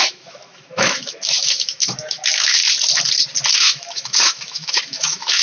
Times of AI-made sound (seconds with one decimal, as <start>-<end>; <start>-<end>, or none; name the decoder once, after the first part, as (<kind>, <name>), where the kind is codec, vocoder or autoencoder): 0.0-2.6 (autoencoder, DAC-VAE); 3.5-5.4

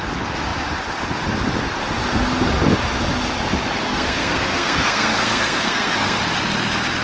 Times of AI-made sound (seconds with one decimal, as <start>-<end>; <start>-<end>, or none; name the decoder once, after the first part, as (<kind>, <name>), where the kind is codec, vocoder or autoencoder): 3.9-6.2 (codec, SNAC)

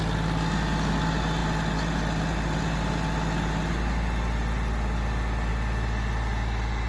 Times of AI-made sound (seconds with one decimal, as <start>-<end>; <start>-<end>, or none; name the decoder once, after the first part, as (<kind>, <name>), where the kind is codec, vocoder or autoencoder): none

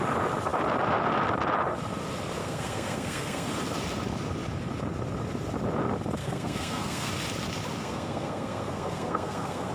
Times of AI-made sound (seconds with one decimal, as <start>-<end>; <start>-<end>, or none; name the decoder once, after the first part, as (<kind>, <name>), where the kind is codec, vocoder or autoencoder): 2.4-3.5 (codec, SNAC); 6.2-7.1; 7.8-9.7

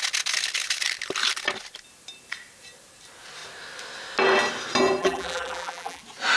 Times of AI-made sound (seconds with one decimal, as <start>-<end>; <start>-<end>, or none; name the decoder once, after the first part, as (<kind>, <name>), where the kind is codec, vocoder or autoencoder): 5.0-6.0 (vocoder, BigVGAN v2)

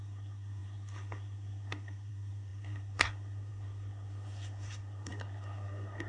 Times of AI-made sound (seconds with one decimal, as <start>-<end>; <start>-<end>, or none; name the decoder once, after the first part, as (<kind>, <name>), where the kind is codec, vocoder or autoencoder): 0.0-6.1 (codec, SNAC)

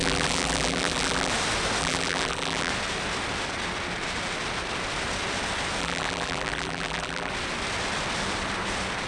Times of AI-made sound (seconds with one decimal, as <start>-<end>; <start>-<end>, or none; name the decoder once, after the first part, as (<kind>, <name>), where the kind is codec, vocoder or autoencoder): 0.0-1.3 (vocoder, BigVGAN v2); 1.8-2.7; 5.8-7.3

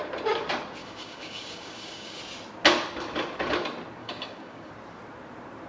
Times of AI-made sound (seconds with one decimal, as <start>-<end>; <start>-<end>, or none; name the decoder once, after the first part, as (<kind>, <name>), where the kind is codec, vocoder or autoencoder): 0.8-2.2 (codec, DAC); 4.0-4.7